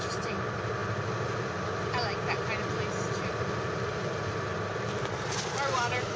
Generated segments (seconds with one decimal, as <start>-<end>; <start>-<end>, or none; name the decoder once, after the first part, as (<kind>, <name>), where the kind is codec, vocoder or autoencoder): none